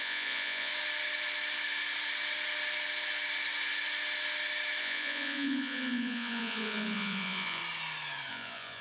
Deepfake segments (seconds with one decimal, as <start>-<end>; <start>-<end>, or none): 0.0-0.7; 4.8-7.6; 8.3-8.8